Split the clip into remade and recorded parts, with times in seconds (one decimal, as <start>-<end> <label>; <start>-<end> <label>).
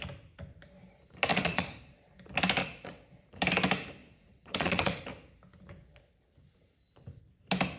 0.0-1.3 recorded; 1.3-2.2 remade; 2.2-2.6 recorded; 2.6-3.1 remade; 3.1-4.0 recorded; 4.0-5.0 remade; 5.0-7.8 recorded